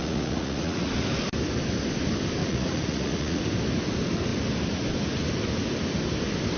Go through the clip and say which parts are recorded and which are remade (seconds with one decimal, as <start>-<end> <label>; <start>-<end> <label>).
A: 0.0-0.9 remade; 0.9-2.4 recorded; 2.4-3.4 remade; 3.4-6.6 recorded